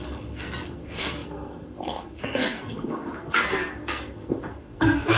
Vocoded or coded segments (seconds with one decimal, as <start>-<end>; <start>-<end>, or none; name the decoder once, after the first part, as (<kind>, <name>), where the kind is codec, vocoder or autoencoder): 0.0-5.2 (codec, SNAC)